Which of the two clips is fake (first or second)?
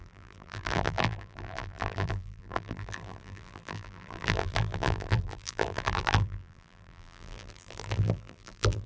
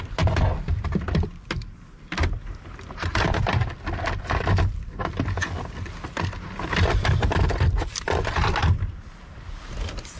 first